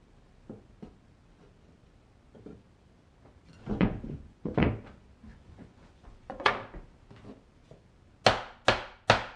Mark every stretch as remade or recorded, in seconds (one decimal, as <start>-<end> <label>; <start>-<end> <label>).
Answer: 0.0-3.7 recorded; 3.7-4.7 remade; 4.7-5.3 recorded; 5.3-6.5 remade; 6.5-9.4 recorded